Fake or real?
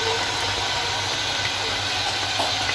real